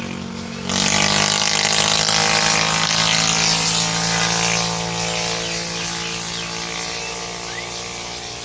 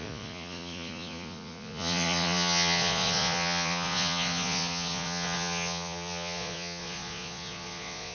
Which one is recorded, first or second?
first